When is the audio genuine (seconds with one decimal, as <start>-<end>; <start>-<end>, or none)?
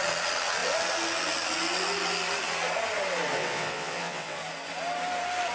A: 0.0-3.3; 4.4-5.5